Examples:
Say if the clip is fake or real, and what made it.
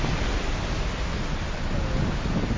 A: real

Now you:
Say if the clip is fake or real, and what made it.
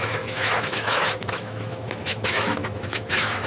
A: fake, autoencoder, DAC-VAE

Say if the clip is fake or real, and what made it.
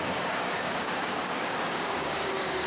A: fake, codec, DAC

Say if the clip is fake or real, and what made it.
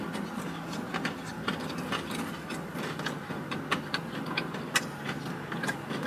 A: real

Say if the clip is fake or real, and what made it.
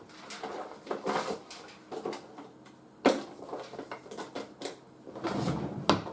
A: real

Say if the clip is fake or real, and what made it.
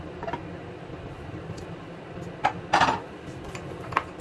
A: real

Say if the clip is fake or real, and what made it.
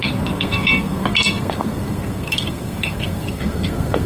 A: fake, codec, SNAC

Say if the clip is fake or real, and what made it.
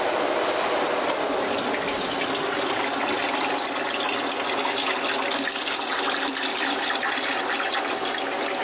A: real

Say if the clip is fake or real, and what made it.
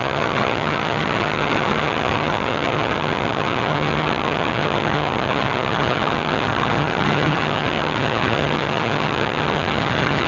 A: fake, vocoder, HiFi-GAN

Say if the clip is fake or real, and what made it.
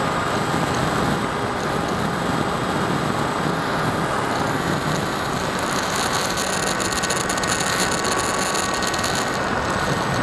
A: real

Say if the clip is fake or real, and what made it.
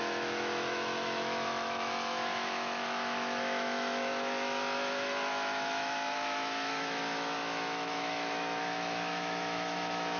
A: fake, autoencoder, DAC-VAE